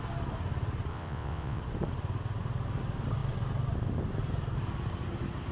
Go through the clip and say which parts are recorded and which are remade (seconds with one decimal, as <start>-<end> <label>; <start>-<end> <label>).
0.0-0.9 recorded; 0.9-1.6 remade; 1.6-5.5 recorded